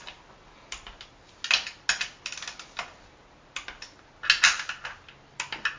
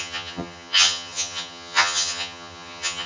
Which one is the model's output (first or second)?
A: second